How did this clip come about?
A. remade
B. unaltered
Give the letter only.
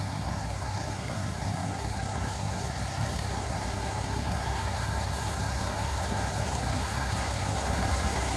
A